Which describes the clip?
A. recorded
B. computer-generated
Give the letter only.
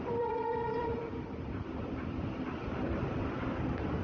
B